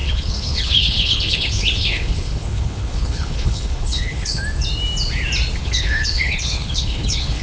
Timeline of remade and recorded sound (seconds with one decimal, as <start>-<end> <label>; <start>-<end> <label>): 0.0-4.4 remade; 4.4-5.6 recorded; 5.6-7.4 remade